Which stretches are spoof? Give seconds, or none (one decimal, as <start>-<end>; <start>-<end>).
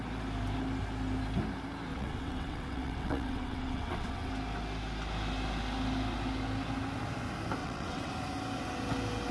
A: 1.9-4.3; 7.6-8.1